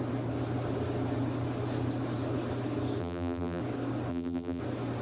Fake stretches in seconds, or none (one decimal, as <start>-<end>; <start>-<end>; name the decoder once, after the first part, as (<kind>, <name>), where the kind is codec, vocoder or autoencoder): 3.0-3.6 (vocoder, BigVGAN v2); 4.1-4.6